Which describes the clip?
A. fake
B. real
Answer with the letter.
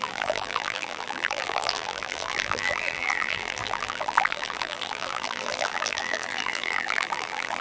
A